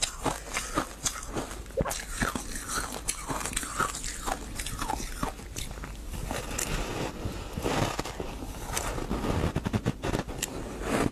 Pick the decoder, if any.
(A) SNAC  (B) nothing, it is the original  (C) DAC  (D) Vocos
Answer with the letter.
B